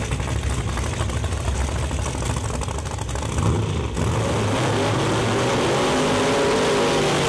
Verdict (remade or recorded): recorded